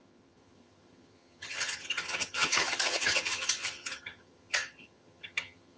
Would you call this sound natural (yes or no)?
no